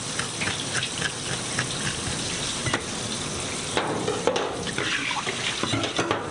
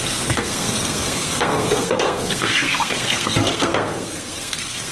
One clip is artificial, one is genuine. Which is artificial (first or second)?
second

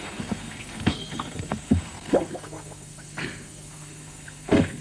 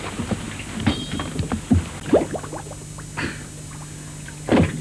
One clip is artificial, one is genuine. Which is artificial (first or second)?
first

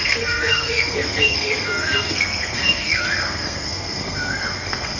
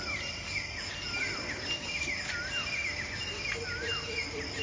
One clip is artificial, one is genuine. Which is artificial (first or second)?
first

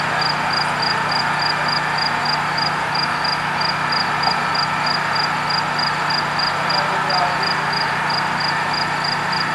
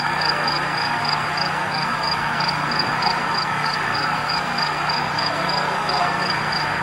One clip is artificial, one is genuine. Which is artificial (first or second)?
second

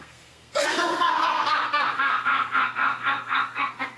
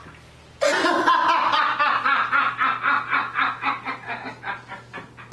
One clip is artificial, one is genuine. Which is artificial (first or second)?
first